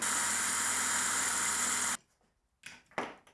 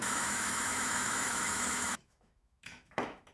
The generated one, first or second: second